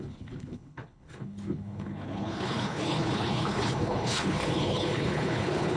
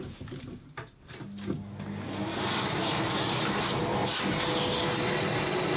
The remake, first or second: first